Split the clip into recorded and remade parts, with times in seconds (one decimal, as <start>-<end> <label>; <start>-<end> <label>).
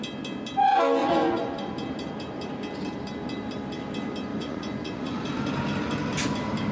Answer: 0.0-1.0 recorded; 1.0-1.7 remade; 1.7-4.3 recorded; 4.3-5.2 remade; 5.2-6.7 recorded